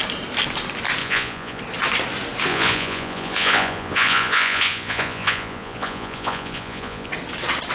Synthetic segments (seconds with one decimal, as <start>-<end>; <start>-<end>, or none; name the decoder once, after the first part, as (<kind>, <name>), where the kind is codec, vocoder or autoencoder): 1.0-1.6 (vocoder, Vocos); 2.5-7.1